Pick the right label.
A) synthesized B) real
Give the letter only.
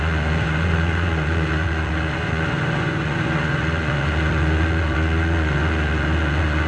A